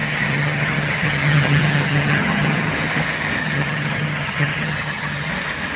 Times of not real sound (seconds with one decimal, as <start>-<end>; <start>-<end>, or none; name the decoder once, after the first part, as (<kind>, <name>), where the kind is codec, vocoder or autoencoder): 0.0-2.7 (vocoder, HiFi-GAN); 3.4-5.3